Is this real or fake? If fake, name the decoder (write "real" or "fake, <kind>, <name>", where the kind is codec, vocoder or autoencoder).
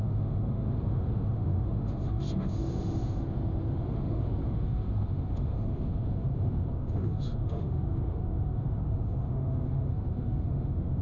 fake, autoencoder, DAC-VAE